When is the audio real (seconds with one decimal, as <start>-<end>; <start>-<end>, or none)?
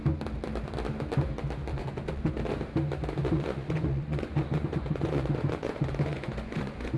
0.0-1.7; 2.3-3.2